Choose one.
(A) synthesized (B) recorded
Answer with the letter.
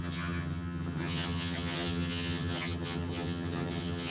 A